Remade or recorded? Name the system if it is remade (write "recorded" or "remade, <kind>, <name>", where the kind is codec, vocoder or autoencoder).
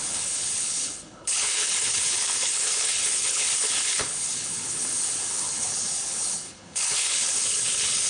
remade, codec, HILCodec